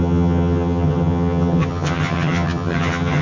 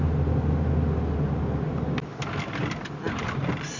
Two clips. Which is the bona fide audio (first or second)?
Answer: second